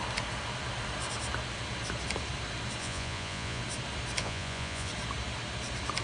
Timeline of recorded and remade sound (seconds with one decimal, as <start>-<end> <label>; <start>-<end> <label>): 0.0-2.8 recorded; 2.8-3.6 remade; 3.6-4.2 recorded; 4.2-4.9 remade; 4.9-6.0 recorded